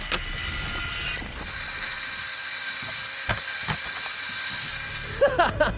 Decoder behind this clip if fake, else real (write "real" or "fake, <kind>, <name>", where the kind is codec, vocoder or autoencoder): real